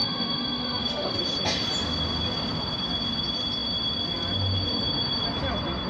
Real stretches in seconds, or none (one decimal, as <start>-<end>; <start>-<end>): 1.2-5.9